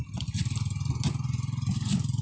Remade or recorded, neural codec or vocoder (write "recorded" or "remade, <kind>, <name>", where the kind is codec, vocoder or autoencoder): recorded